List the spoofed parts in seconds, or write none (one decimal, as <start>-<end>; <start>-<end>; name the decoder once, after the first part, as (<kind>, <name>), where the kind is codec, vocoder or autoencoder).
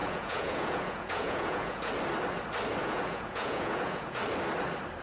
0.0-1.9 (vocoder, Vocos); 2.8-4.2